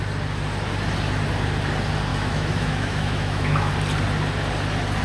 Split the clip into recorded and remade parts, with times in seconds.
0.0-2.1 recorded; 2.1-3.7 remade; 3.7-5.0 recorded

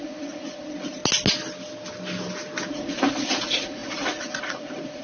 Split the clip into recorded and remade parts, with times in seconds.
0.0-1.0 remade; 1.0-2.7 recorded; 2.7-5.0 remade

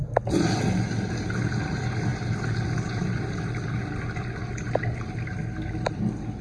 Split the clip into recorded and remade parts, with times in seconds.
0.0-6.4 recorded

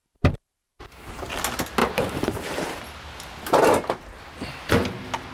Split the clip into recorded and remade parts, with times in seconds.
0.0-1.2 remade; 1.2-1.8 recorded; 1.8-2.8 remade; 2.8-5.3 recorded